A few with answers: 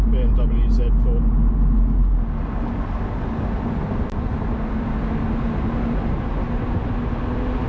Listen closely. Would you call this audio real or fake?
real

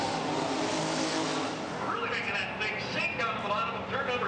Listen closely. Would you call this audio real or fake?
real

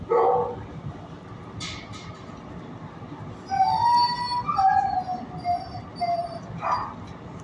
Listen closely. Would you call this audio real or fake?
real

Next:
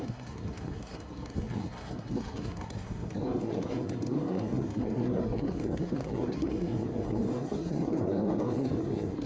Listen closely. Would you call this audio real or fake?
fake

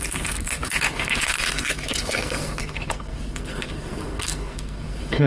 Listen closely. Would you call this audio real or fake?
fake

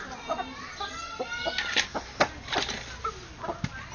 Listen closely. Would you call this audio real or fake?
real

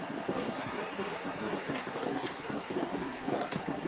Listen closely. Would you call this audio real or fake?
fake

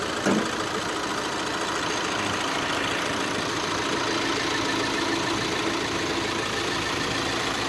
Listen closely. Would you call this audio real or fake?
real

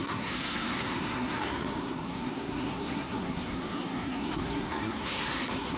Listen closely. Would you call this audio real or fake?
fake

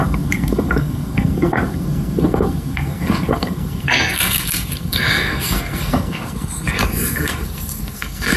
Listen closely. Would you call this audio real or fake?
fake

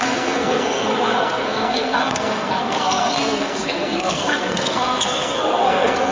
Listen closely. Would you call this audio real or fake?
fake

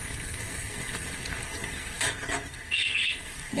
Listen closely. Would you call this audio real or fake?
fake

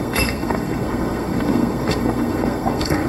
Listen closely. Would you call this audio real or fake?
fake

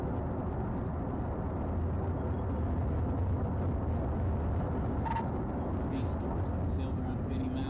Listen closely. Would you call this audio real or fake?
real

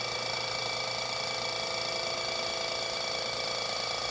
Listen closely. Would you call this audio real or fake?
real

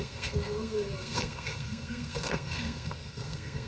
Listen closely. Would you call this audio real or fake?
fake